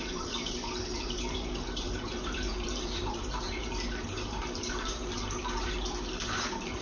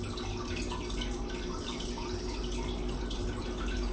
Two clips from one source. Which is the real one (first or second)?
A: second